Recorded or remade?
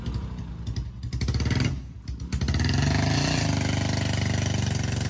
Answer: recorded